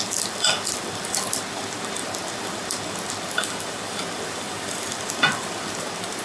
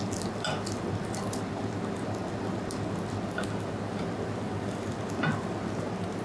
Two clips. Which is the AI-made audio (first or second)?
first